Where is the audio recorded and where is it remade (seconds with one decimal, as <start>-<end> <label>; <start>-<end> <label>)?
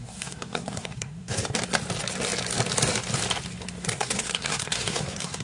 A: 0.0-1.4 remade; 1.4-3.8 recorded; 3.8-5.4 remade